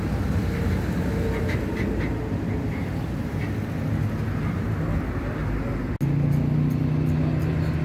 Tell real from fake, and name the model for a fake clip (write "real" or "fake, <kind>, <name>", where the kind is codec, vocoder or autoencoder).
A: real